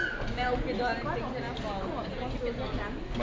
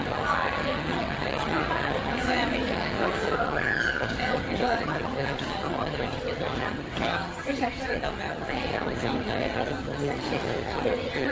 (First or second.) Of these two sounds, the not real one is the second